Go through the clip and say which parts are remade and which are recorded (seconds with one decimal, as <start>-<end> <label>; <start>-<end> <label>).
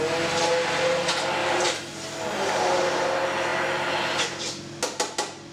0.0-0.5 recorded; 0.5-1.0 remade; 1.0-1.4 recorded; 1.4-2.5 remade; 2.5-5.5 recorded